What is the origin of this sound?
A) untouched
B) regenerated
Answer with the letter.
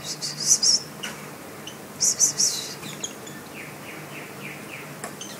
B